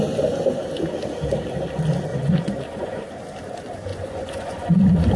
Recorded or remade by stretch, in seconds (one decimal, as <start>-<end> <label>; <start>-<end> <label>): 0.0-2.1 recorded; 2.1-3.1 remade; 3.1-3.9 recorded; 3.9-4.8 remade; 4.8-5.2 recorded